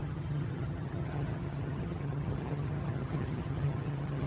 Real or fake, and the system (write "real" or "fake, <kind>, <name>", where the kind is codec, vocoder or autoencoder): fake, vocoder, HiFi-GAN